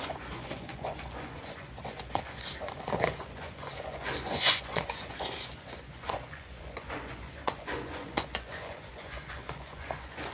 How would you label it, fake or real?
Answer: fake